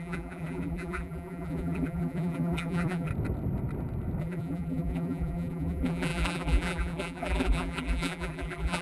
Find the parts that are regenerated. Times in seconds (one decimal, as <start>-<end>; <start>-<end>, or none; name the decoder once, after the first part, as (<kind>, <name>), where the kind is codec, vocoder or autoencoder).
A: 0.0-3.1 (vocoder, BigVGAN v2); 4.2-8.8